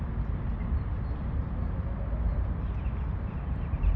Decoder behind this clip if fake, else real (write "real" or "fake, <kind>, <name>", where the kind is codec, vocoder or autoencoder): real